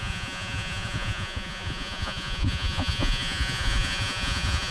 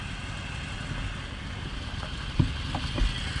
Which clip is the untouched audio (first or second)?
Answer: second